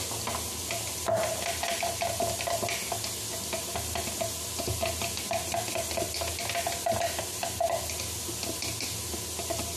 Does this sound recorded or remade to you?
recorded